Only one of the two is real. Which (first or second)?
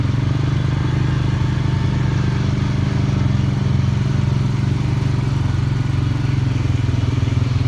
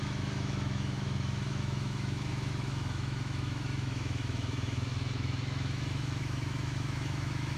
first